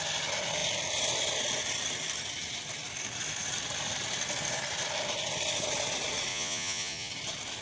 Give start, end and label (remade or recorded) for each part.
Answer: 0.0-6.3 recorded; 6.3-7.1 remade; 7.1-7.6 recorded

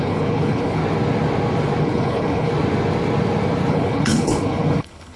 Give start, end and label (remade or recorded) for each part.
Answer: 0.0-0.8 remade; 0.8-1.8 recorded; 1.8-2.5 remade; 2.5-3.7 recorded; 3.7-5.2 remade

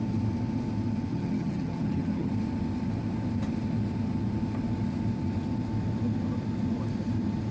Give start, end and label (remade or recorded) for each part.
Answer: 0.0-1.1 recorded; 1.1-2.3 remade; 2.3-7.5 recorded

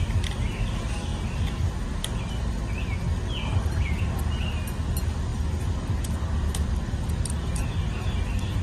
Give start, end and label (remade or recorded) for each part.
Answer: 0.0-8.6 recorded

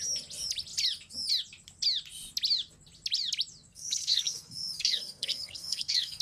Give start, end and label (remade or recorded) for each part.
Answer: 0.0-3.7 recorded; 3.7-6.2 remade

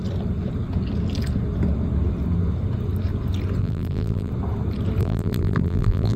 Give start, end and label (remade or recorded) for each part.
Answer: 0.0-3.6 recorded; 3.6-4.3 remade; 4.3-5.0 recorded; 5.0-6.2 remade

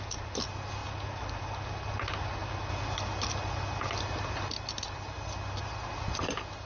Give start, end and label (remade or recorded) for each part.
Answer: 0.0-6.7 recorded

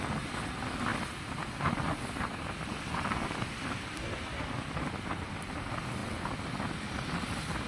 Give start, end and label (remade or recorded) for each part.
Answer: 0.0-7.7 recorded